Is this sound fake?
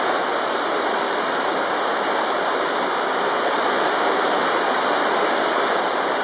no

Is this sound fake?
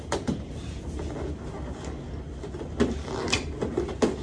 no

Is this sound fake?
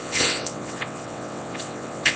yes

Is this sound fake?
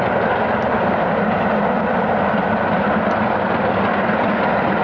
no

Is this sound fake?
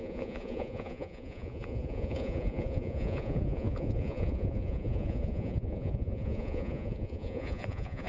yes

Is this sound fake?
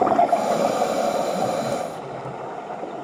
no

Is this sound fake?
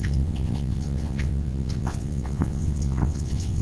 yes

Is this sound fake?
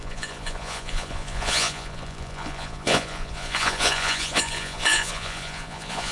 yes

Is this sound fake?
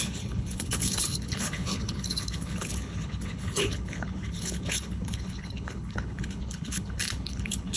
yes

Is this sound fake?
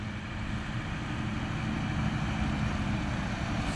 no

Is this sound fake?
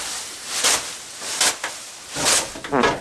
no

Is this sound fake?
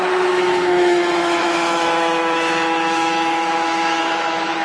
yes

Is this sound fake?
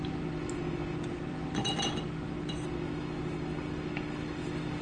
no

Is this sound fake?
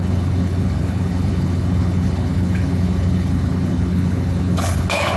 yes